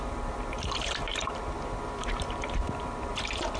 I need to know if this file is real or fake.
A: fake